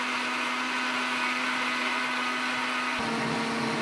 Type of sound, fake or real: real